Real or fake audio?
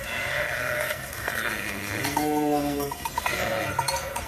fake